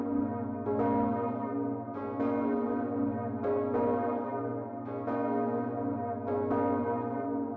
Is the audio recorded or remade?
recorded